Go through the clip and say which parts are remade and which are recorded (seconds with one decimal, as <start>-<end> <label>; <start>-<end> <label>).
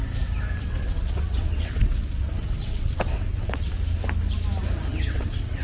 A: 0.0-0.6 recorded; 0.6-3.7 remade; 3.7-4.9 recorded; 4.9-5.6 remade